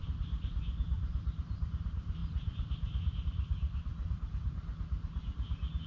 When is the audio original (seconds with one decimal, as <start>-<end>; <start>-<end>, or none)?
0.0-5.9